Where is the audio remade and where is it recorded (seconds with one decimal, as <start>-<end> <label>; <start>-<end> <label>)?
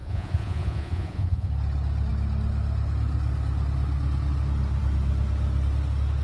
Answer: 0.0-1.5 remade; 1.5-6.2 recorded